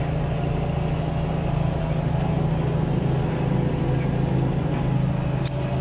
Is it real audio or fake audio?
real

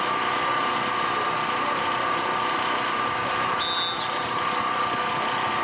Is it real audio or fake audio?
real